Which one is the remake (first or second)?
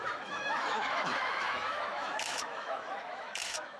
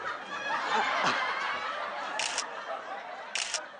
first